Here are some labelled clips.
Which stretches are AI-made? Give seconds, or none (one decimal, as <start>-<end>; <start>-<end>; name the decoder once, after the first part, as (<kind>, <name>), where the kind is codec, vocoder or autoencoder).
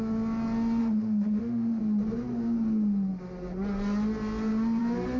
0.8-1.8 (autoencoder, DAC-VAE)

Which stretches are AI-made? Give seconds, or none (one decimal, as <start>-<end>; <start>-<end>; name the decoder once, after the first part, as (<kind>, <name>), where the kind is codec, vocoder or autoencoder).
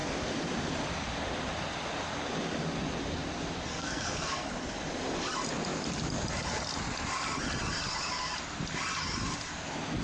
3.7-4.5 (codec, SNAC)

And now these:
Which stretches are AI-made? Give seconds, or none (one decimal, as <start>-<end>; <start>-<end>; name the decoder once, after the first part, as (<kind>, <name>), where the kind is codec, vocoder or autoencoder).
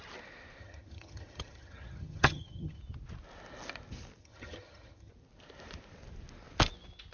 0.6-2.8 (vocoder, HiFi-GAN); 4.2-5.1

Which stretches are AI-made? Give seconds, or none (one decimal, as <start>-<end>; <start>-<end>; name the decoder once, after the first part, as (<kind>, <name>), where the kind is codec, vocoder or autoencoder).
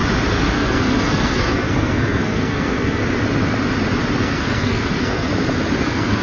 0.5-3.0 (codec, SNAC); 4.2-5.3; 5.8-6.2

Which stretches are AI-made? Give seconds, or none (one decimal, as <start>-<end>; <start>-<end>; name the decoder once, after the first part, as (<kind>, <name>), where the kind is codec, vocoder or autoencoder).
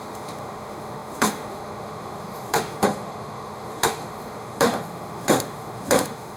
0.0-6.4 (autoencoder, DAC-VAE)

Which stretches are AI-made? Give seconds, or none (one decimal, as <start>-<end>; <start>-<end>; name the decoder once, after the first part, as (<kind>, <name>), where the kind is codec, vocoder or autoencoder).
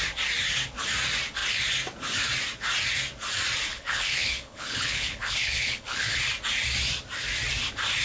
3.7-6.2 (codec, HILCodec)